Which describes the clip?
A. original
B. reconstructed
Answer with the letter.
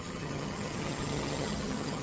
B